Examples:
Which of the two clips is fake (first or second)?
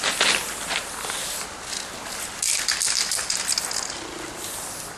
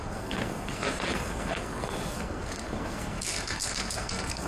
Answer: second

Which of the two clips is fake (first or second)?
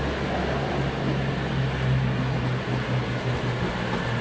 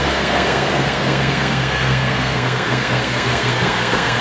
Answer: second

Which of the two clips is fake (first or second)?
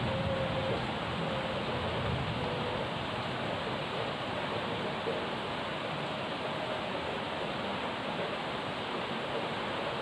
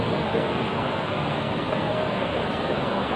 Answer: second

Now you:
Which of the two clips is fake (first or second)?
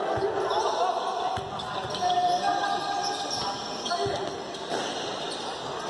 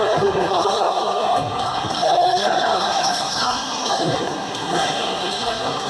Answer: second